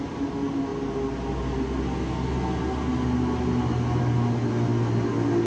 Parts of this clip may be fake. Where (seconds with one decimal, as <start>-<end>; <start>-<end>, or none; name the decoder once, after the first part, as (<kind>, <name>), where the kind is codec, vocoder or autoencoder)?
none